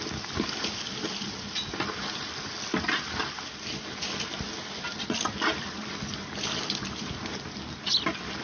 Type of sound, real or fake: real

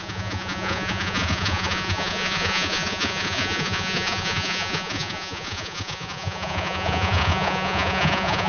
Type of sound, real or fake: fake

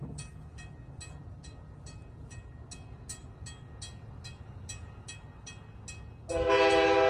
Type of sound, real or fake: real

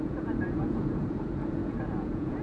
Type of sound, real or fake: fake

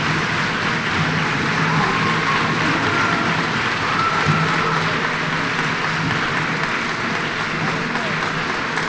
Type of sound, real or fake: real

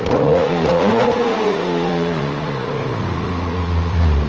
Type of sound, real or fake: fake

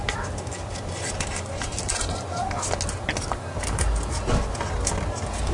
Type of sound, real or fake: real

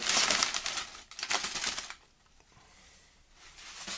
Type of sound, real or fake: real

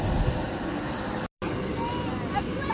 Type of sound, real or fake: real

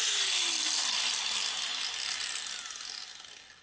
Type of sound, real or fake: real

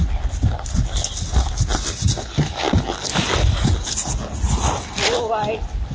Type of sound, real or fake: real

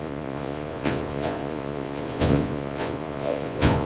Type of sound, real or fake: fake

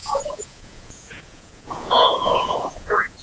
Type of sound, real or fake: fake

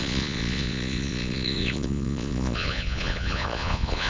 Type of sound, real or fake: fake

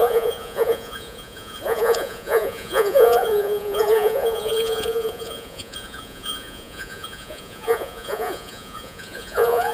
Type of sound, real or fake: fake